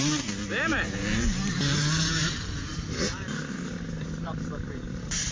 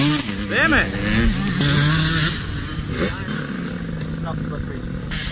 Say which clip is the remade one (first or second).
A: first